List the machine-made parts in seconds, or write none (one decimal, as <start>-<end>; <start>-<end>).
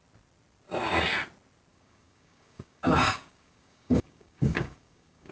1.7-5.3